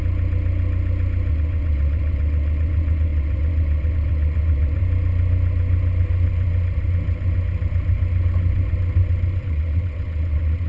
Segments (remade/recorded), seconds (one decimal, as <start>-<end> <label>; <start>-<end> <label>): 0.0-1.3 recorded; 1.3-4.8 remade; 4.8-9.4 recorded; 9.4-10.7 remade